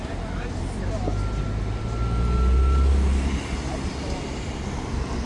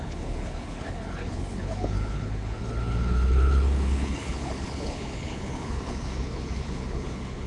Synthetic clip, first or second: second